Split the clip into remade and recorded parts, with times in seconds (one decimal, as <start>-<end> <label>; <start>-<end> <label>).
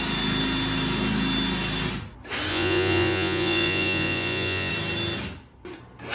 0.0-2.5 recorded; 2.5-4.7 remade; 4.7-6.1 recorded